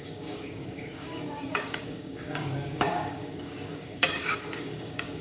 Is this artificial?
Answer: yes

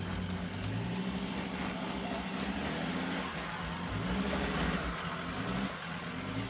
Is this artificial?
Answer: no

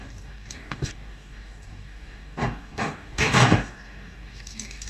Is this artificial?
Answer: yes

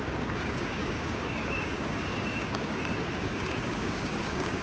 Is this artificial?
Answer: yes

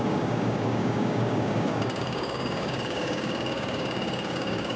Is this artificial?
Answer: yes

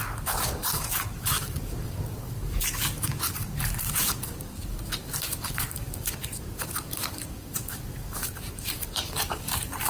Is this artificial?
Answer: yes